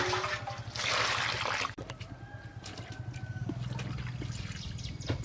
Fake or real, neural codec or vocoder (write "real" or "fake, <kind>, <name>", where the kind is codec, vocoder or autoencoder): real